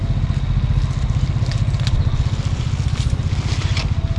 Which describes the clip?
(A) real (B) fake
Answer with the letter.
A